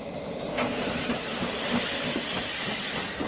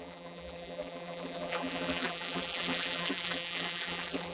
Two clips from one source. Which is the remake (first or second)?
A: second